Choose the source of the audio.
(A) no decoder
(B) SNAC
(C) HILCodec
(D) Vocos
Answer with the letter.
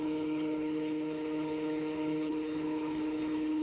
C